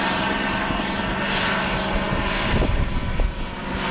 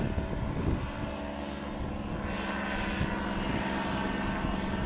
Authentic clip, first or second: second